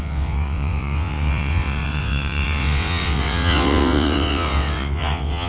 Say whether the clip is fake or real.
fake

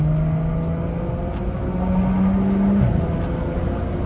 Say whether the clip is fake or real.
real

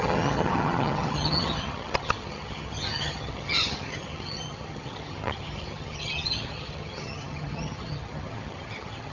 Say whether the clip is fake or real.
fake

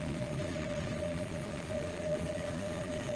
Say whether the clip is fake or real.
fake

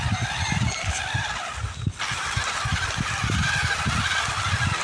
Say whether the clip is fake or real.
real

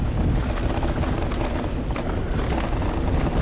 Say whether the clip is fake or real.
real